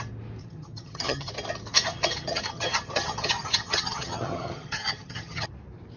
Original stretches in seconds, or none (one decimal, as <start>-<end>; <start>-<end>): 0.0-0.4; 1.3-1.9; 5.5-6.0